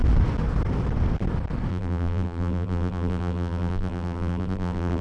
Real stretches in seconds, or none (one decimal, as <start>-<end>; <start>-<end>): 0.0-1.7